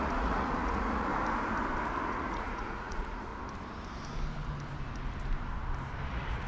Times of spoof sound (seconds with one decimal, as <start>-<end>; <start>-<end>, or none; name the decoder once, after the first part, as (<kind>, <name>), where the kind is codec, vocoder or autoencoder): 0.0-1.1 (vocoder, Vocos); 2.1-3.3; 6.1-6.5